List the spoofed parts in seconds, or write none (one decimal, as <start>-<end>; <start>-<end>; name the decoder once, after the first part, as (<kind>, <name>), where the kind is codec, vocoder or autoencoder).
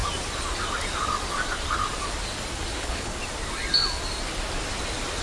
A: 2.7-3.1 (codec, HILCodec)